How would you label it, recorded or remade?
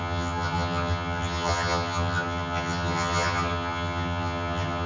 remade